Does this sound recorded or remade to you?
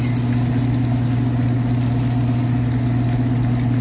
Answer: recorded